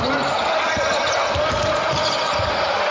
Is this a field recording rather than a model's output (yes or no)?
yes